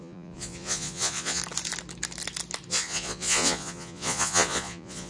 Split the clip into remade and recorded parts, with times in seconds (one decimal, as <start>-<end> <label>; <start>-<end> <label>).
0.0-1.4 remade; 1.4-2.7 recorded; 2.7-5.1 remade

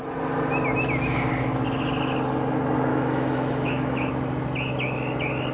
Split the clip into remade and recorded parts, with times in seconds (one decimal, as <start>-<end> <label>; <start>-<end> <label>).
0.0-2.9 recorded; 2.9-4.1 remade; 4.1-5.5 recorded

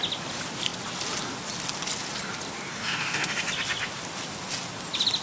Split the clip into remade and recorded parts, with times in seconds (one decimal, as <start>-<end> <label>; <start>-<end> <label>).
0.0-2.7 recorded; 2.7-3.4 remade; 3.4-5.2 recorded

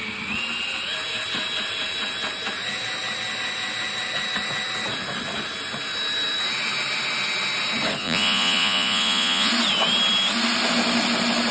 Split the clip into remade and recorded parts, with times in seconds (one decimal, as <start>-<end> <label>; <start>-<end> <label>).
0.0-8.0 recorded; 8.0-9.5 remade; 9.5-11.5 recorded